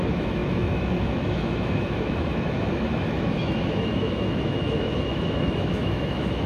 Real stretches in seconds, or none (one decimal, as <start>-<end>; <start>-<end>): none